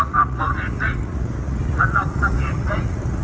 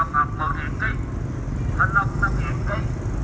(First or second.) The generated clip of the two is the first